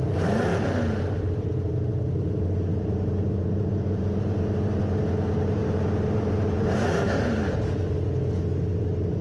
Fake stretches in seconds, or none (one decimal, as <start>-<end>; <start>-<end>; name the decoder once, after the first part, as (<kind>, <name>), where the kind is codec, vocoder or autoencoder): 2.7-4.3 (vocoder, BigVGAN v2); 5.6-7.5